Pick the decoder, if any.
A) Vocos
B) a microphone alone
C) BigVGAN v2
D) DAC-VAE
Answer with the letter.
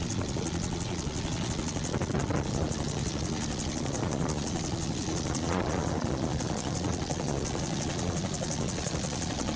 A